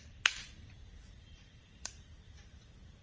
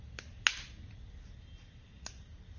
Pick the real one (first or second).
second